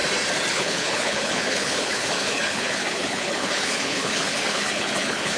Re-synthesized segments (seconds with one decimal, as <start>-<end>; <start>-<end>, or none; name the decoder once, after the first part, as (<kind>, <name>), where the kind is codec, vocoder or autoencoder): 0.5-5.4 (codec, HILCodec)